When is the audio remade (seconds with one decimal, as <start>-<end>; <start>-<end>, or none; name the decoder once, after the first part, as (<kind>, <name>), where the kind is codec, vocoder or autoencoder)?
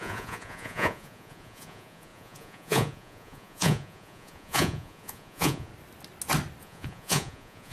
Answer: 0.0-5.7 (vocoder, Vocos); 6.6-7.7